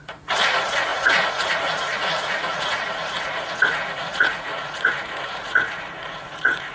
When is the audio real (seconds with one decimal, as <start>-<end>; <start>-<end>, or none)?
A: none